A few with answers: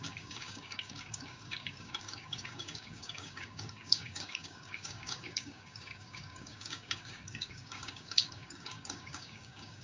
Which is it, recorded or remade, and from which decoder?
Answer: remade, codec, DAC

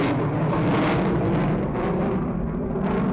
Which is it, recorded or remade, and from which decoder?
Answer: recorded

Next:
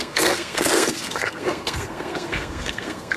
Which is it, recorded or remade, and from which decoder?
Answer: remade, codec, SNAC